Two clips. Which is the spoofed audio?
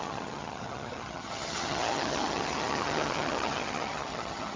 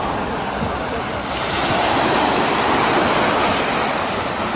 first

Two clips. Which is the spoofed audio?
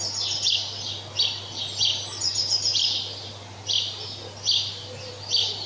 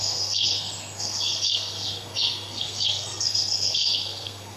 second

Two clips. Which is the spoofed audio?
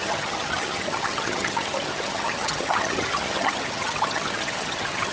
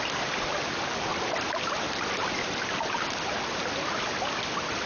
first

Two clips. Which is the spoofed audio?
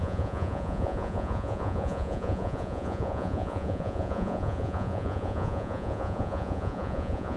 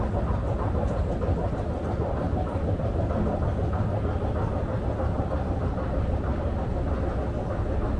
first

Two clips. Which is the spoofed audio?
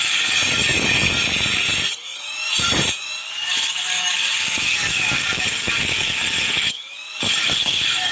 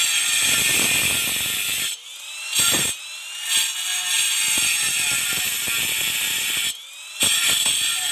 first